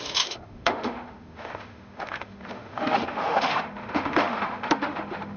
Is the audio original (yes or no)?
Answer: no